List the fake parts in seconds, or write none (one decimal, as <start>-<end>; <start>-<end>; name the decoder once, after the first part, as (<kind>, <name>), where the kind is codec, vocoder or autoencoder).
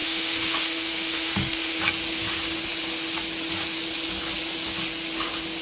0.0-1.8 (autoencoder, DAC-VAE)